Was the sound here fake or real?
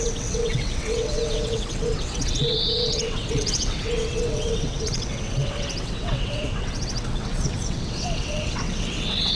fake